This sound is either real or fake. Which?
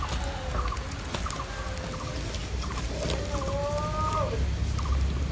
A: real